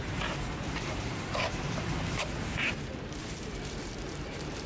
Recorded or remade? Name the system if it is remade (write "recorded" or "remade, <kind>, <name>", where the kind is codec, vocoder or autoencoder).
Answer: remade, vocoder, BigVGAN v2